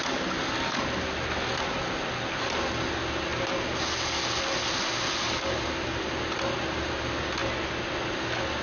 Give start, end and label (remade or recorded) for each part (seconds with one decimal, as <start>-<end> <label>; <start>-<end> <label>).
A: 0.0-8.6 recorded